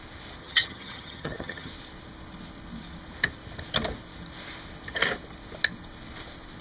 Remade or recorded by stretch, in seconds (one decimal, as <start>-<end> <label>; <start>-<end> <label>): 0.0-0.4 recorded; 0.4-1.7 remade; 1.7-6.6 recorded